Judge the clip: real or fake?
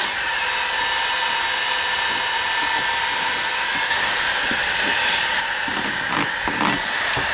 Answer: real